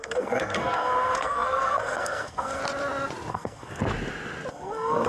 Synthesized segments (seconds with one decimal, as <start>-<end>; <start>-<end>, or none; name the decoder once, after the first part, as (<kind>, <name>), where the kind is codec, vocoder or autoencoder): 0.0-2.6 (codec, SNAC); 3.3-3.8; 4.5-5.1

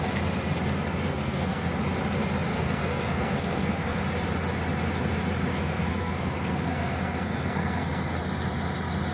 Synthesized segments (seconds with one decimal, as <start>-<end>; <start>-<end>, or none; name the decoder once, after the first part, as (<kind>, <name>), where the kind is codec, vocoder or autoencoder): 1.1-1.7 (codec, SNAC); 2.5-4.0; 5.5-8.2

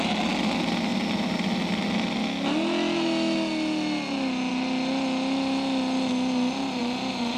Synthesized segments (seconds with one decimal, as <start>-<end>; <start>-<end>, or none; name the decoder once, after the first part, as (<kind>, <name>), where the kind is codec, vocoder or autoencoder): none

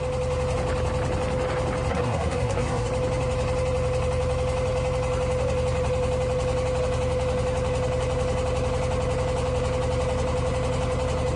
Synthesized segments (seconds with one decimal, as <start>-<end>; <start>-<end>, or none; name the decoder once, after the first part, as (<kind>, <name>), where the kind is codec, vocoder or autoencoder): 1.9-2.9 (codec, SNAC)

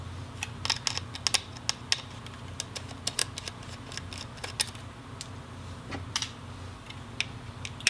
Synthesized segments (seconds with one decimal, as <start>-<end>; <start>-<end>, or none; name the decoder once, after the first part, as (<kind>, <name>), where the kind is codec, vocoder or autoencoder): none

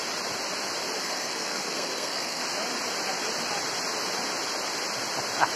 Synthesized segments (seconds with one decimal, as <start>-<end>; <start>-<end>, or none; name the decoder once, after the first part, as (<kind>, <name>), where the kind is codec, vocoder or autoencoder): 1.0-2.4 (codec, SNAC)

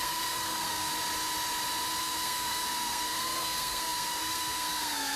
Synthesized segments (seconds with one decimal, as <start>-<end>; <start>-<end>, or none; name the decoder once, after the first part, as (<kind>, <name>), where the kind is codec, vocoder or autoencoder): 0.0-0.9 (codec, SNAC); 2.0-5.2